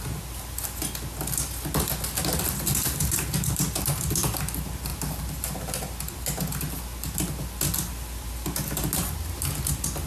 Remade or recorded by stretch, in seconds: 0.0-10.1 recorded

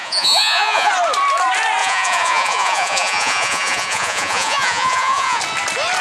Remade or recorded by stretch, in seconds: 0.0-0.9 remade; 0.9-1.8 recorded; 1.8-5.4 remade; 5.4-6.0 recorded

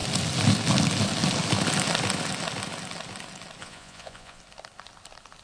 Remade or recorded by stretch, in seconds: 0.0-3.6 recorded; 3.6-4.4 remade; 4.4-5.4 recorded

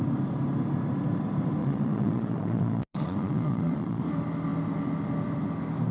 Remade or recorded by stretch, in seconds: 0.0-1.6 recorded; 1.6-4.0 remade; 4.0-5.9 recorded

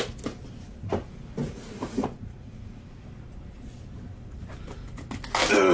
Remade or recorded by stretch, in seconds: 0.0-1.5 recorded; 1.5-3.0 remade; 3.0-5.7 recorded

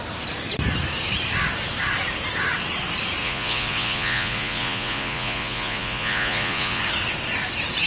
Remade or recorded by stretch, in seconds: 0.0-3.2 recorded; 3.2-6.8 remade; 6.8-7.9 recorded

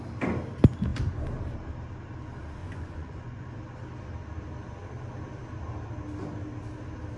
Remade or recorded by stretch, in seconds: 0.0-2.6 recorded; 2.6-3.6 remade; 3.6-7.2 recorded

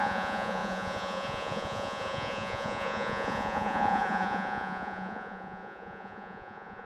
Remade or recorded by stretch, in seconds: 0.0-6.9 remade